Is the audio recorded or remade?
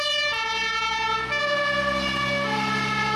recorded